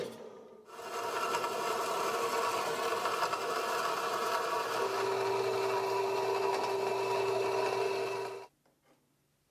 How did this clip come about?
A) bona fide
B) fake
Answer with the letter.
A